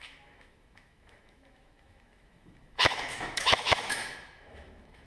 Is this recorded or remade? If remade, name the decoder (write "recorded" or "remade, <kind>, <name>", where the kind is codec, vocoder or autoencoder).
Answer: remade, autoencoder, DAC-VAE